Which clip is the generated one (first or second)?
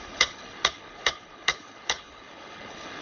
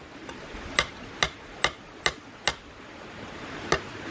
first